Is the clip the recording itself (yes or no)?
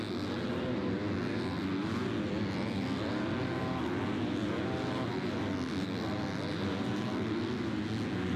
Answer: yes